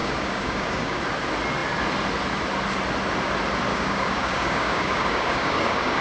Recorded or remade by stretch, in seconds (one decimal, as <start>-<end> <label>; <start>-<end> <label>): 0.0-1.0 remade; 1.0-3.7 recorded; 3.7-6.0 remade